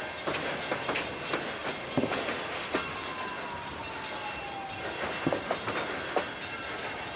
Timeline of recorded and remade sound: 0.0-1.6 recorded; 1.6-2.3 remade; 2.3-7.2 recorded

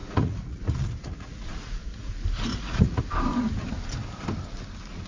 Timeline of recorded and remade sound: 0.0-2.1 remade; 2.1-2.5 recorded; 2.5-3.0 remade; 3.0-5.1 recorded